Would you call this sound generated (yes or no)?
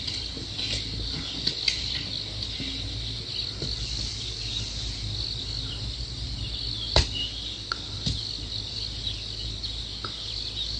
no